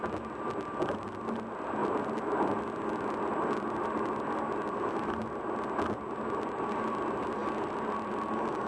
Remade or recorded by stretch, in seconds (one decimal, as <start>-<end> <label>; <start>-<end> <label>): 0.0-8.7 recorded